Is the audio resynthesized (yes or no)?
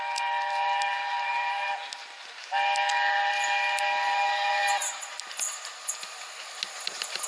no